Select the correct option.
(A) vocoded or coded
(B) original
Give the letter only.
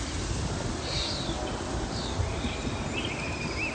B